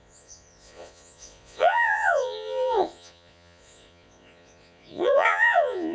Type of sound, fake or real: fake